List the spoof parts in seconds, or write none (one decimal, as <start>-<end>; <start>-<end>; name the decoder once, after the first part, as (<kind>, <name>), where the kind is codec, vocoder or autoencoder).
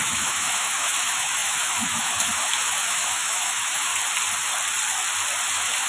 0.0-3.9 (autoencoder, DAC-VAE); 5.5-5.9